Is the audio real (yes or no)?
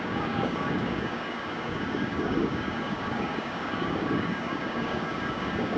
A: no